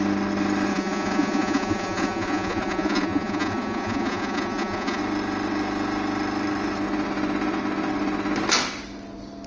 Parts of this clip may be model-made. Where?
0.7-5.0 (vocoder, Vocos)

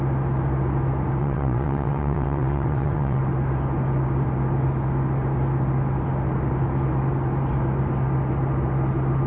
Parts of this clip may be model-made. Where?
1.2-3.2 (vocoder, WaveNeXt)

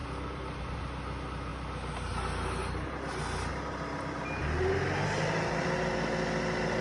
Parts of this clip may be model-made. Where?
none

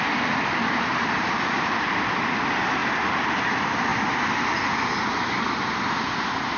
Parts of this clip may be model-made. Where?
0.0-2.8 (vocoder, BigVGAN v2); 3.5-3.9; 5.6-6.6

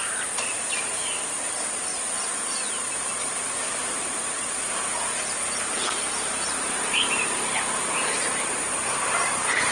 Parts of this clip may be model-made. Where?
0.0-1.9 (vocoder, BigVGAN v2); 5.6-9.7

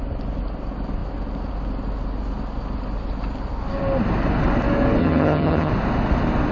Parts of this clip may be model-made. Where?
5.0-5.7 (vocoder, HiFi-GAN)

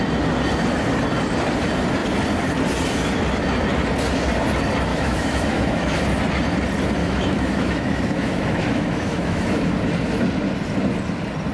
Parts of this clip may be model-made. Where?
4.9-6.0 (autoencoder, DAC-VAE); 7.0-9.7

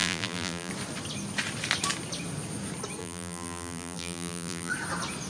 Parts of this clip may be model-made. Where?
0.0-0.7 (vocoder, BigVGAN v2); 3.0-4.7